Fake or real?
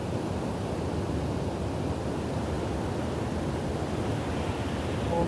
real